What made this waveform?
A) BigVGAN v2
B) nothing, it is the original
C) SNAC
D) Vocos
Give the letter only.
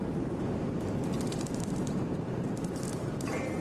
A